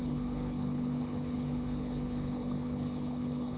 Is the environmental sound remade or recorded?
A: remade